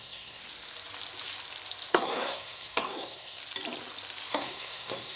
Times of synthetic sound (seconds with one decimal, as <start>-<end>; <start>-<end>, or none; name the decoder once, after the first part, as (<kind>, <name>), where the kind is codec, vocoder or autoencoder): 0.0-0.4 (codec, SNAC); 1.9-3.4; 4.3-5.2